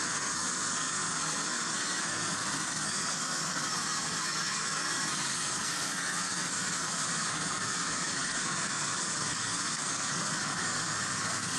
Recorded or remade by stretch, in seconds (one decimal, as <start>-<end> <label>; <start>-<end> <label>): 0.0-11.6 remade